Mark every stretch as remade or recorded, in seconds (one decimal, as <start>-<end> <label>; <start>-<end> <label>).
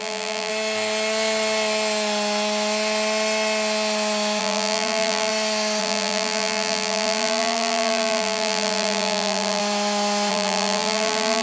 0.0-0.5 remade; 0.5-4.4 recorded; 4.4-5.3 remade; 5.3-5.8 recorded; 5.8-9.6 remade; 9.6-10.3 recorded; 10.3-11.4 remade